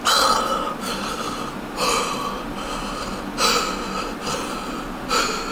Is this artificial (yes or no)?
no